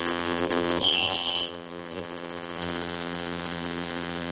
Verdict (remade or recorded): remade